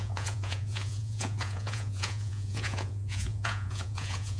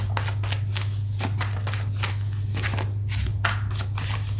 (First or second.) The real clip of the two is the second